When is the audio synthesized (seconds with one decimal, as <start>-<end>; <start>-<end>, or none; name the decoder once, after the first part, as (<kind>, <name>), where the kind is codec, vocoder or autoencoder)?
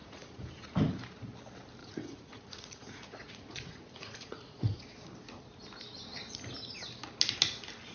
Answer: 0.0-0.7 (vocoder, Vocos); 1.8-4.8